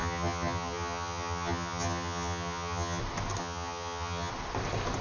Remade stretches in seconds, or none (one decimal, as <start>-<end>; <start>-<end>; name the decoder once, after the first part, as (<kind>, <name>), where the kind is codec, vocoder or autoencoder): 0.0-3.0 (vocoder, HiFi-GAN); 3.4-4.3